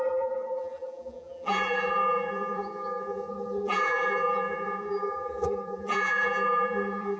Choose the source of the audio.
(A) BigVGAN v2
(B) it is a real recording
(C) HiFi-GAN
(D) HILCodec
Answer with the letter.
A